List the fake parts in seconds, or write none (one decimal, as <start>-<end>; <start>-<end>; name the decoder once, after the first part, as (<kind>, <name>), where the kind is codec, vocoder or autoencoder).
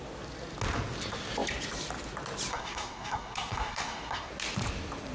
2.5-4.3 (codec, SNAC)